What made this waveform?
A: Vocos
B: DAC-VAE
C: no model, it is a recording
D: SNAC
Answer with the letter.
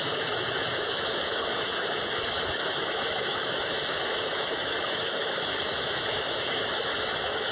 B